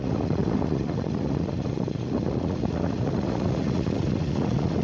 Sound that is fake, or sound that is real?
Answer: fake